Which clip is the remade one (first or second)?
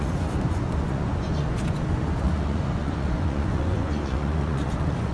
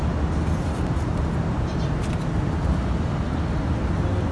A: first